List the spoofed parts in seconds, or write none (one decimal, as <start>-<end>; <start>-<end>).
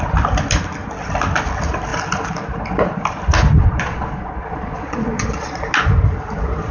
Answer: 3.6-5.6